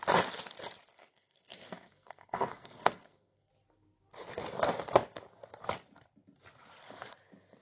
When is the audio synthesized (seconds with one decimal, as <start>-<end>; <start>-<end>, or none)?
0.9-3.5